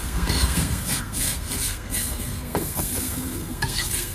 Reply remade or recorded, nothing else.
remade